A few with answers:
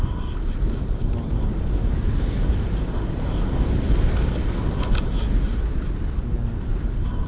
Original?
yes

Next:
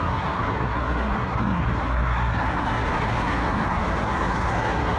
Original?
no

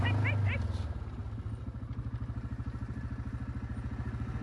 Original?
yes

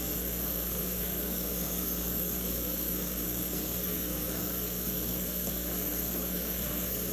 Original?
no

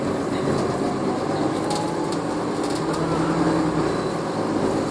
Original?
yes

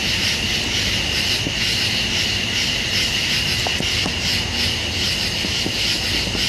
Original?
yes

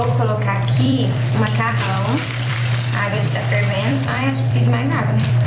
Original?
no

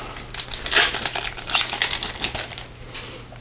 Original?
yes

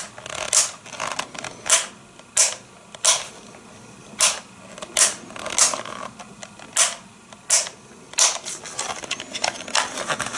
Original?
yes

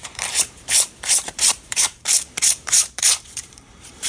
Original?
no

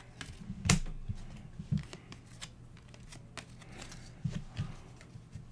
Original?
yes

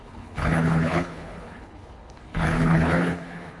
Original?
no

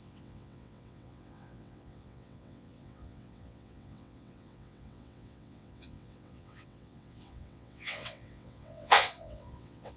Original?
no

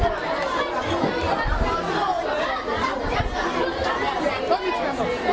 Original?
yes